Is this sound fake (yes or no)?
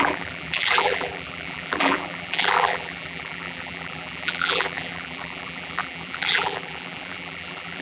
yes